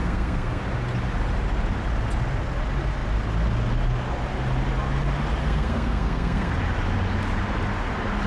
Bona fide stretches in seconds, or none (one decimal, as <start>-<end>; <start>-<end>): 0.6-5.4; 6.5-8.3